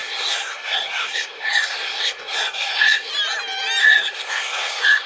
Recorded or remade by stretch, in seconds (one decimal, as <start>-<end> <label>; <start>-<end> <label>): 0.0-3.1 remade; 3.1-3.8 recorded; 3.8-5.1 remade